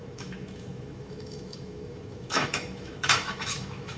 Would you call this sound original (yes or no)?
no